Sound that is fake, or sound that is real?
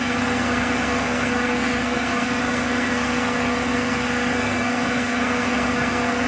fake